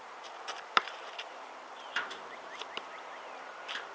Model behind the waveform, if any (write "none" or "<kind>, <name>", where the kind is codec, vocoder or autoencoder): vocoder, BigVGAN v2